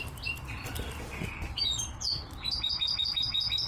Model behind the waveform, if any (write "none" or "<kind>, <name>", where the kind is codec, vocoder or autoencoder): none